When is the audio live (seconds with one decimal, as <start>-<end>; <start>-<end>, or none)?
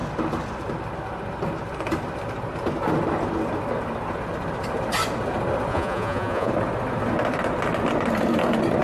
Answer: 0.0-5.7; 6.5-8.8